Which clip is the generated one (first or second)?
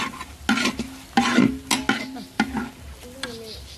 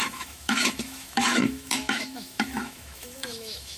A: second